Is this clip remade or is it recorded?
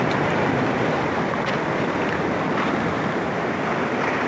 recorded